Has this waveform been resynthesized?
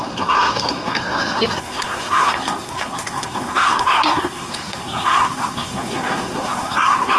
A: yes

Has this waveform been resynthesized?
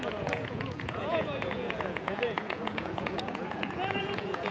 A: yes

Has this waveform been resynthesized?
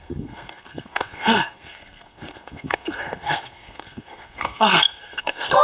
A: yes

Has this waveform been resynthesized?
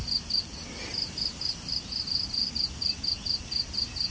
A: no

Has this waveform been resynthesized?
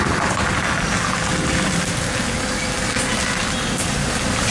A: no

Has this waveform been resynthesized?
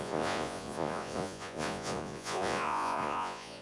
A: yes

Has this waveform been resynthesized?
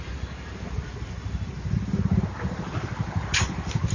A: no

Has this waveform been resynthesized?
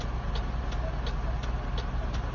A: no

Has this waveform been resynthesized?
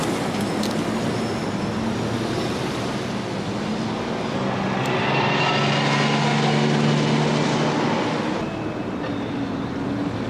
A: no